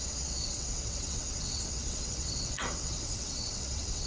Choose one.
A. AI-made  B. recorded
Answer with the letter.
A